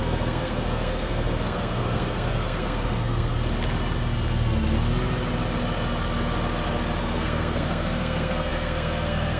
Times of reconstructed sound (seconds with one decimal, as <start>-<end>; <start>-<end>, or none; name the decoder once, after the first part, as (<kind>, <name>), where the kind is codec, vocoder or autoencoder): 0.0-3.3 (codec, SNAC); 7.0-9.4